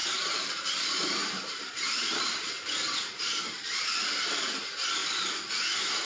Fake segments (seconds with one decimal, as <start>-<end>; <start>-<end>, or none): 0.0-5.0